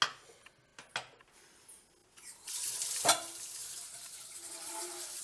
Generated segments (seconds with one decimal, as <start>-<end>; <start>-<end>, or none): none